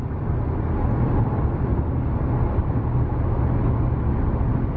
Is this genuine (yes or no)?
yes